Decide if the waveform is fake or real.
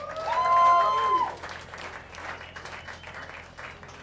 real